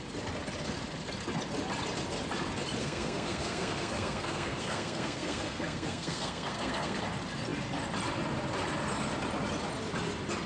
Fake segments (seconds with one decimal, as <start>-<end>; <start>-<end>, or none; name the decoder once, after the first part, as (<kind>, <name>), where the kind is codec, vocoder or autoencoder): 2.8-7.0 (codec, SNAC)